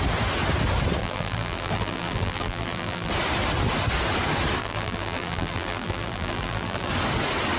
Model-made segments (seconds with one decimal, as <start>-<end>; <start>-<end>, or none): 1.0-3.1; 4.6-6.9